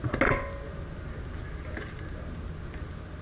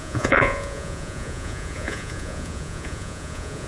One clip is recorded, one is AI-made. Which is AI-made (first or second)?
second